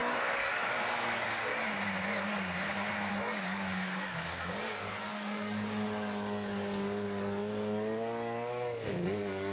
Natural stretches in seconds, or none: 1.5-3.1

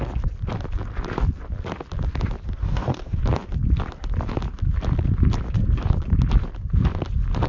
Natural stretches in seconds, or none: 0.0-2.6; 3.2-7.5

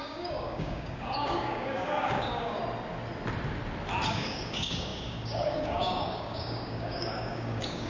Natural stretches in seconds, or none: 2.6-4.1